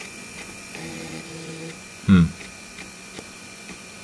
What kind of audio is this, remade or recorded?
remade